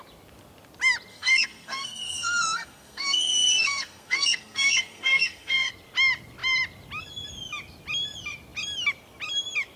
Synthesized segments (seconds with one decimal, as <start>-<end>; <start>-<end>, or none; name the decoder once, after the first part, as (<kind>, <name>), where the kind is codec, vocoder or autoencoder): 1.1-5.7 (codec, SNAC)

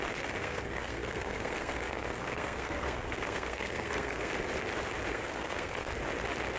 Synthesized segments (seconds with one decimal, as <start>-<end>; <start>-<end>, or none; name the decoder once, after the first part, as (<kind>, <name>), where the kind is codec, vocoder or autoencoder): 0.4-4.3 (codec, SNAC); 5.1-5.9

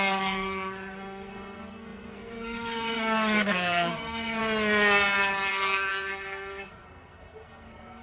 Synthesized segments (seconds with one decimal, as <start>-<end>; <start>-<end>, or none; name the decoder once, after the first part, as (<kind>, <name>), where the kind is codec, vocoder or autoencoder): 0.0-4.4 (codec, SNAC); 5.5-8.0

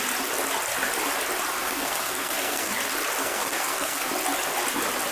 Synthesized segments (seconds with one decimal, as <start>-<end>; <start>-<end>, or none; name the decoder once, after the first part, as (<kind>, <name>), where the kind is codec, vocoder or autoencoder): 1.6-2.7 (codec, SNAC); 3.2-4.1

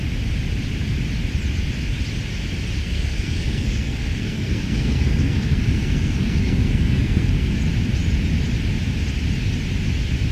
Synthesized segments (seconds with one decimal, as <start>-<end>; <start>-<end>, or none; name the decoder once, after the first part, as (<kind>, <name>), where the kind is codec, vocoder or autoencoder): 2.8-7.6 (codec, SNAC)